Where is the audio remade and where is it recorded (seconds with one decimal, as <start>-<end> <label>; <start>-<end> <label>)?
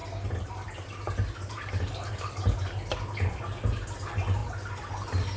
0.0-5.4 recorded